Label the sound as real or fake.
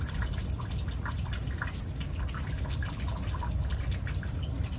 real